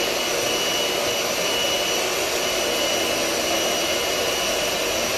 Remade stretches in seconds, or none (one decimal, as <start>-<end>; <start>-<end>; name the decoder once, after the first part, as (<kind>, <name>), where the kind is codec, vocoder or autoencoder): none